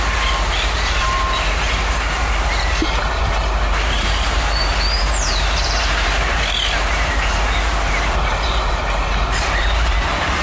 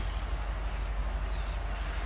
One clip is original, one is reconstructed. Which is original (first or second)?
second